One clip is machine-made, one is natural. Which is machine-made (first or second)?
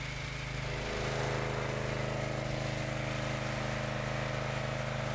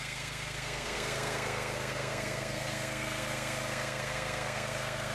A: second